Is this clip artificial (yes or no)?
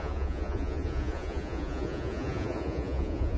yes